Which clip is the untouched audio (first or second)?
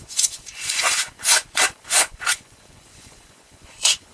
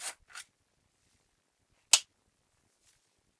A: second